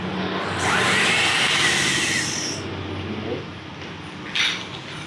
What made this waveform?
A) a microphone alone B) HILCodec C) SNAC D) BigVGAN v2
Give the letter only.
A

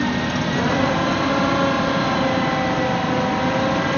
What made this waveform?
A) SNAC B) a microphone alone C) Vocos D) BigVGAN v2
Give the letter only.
B